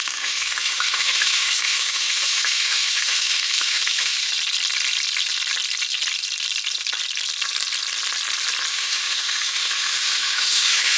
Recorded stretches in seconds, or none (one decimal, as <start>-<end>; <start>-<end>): 4.3-8.7